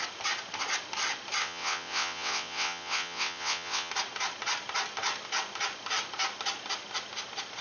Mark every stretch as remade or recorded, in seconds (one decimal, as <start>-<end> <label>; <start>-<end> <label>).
0.0-1.4 recorded; 1.4-3.9 remade; 3.9-7.6 recorded